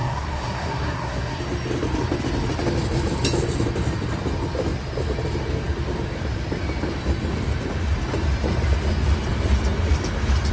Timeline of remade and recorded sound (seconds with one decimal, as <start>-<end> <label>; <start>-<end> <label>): 0.0-1.4 remade; 1.4-10.5 recorded